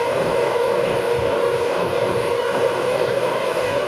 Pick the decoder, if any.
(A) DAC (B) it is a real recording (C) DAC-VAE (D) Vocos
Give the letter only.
A